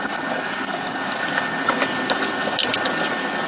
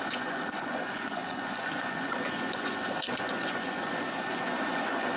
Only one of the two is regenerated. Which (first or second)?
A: second